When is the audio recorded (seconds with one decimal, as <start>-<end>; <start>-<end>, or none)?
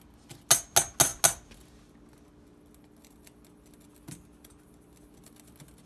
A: 0.0-5.9